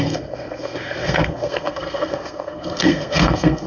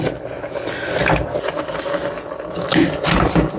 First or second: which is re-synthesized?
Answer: first